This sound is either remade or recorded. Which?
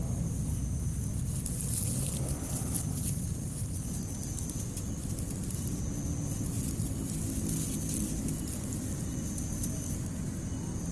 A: recorded